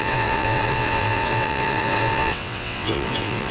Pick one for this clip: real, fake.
fake